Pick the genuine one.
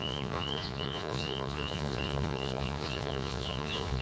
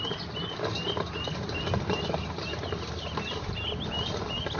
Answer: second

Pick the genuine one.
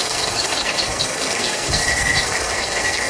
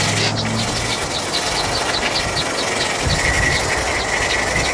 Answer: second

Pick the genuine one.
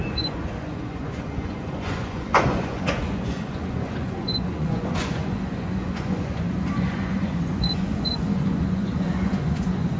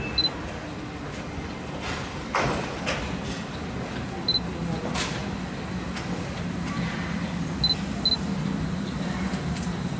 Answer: second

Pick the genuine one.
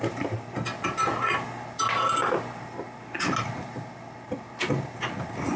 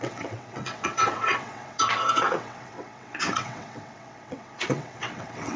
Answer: first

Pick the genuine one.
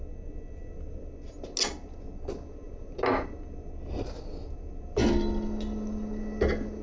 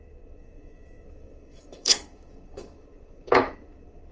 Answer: first